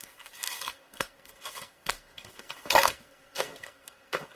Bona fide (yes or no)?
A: no